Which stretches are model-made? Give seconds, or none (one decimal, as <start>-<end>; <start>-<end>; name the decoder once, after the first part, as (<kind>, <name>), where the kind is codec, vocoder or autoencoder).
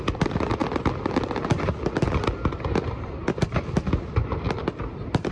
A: none